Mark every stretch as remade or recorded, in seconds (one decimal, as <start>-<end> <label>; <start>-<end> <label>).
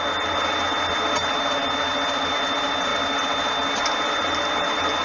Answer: 0.0-5.0 recorded